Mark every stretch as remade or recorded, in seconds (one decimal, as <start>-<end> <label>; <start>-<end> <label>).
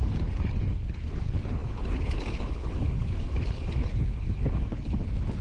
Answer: 0.0-5.4 remade